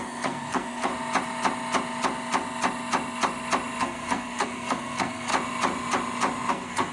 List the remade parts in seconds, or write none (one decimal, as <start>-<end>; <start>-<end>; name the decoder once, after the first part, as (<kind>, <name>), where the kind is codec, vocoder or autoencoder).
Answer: 0.0-0.9 (codec, SNAC); 3.8-5.3; 6.5-6.9